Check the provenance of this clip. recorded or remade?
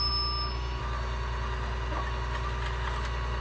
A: recorded